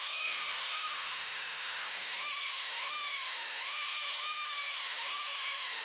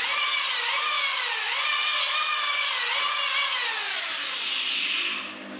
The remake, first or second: first